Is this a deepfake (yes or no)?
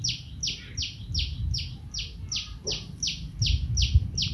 no